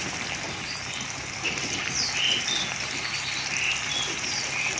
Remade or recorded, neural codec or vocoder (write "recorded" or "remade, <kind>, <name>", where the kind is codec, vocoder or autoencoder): recorded